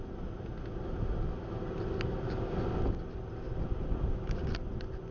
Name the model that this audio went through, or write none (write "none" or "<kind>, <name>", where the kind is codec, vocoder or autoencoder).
none